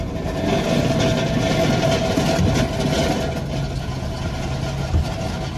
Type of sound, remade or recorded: recorded